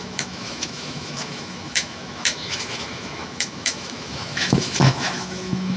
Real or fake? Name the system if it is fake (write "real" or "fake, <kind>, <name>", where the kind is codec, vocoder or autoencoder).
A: fake, autoencoder, DAC-VAE